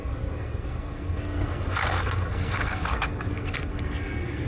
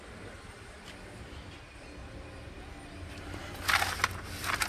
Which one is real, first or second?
second